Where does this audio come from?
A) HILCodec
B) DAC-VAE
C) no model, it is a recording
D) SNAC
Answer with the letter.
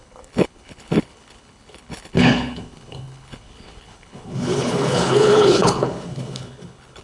A